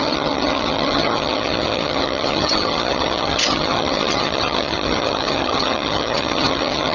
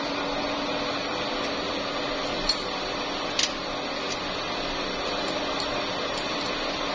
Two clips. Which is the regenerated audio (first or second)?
first